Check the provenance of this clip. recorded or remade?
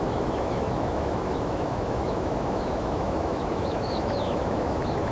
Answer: remade